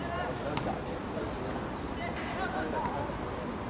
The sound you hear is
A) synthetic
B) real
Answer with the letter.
B